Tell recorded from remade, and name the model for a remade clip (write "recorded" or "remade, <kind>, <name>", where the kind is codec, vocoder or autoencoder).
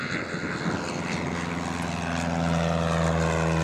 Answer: recorded